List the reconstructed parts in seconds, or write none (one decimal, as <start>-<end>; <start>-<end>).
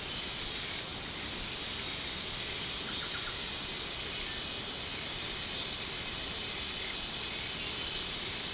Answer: none